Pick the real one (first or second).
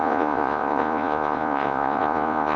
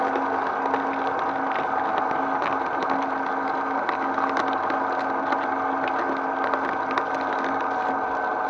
second